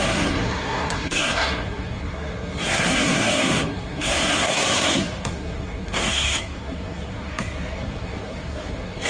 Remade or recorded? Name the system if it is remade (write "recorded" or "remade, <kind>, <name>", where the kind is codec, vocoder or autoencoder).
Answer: remade, codec, SNAC